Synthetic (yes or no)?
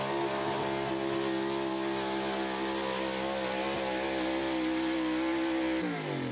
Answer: no